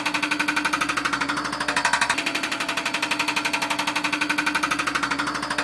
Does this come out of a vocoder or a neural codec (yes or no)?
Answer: no